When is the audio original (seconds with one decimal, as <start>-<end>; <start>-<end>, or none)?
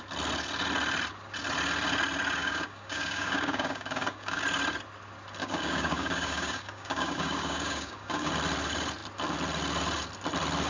0.0-2.4; 4.4-5.4; 8.3-10.7